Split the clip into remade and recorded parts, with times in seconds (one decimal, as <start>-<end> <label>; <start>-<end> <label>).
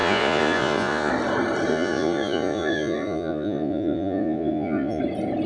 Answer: 0.0-1.1 remade; 1.1-1.7 recorded; 1.7-5.0 remade; 5.0-5.5 recorded